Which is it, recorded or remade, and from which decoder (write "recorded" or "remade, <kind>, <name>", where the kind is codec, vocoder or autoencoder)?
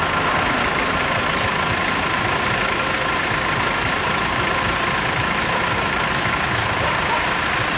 recorded